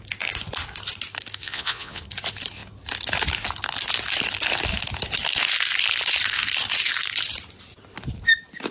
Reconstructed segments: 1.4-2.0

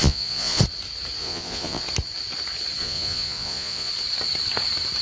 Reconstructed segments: 0.0-0.6; 1.2-1.8; 2.8-3.9

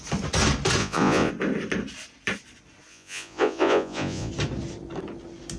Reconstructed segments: 0.8-1.3; 2.9-4.3

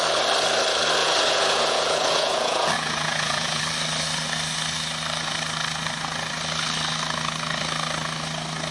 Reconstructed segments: 1.0-3.6

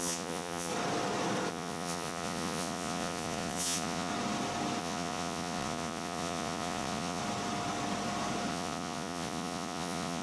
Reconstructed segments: 0.0-0.7; 1.5-4.1; 4.8-7.2; 8.5-10.2